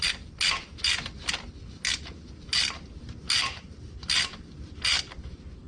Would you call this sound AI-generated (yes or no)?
no